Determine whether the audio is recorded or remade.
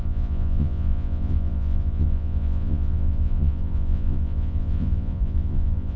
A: remade